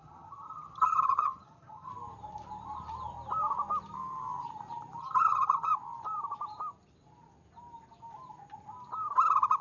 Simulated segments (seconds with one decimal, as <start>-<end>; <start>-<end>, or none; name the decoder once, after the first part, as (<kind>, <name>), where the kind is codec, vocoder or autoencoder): 0.0-1.9 (vocoder, HiFi-GAN); 5.0-5.7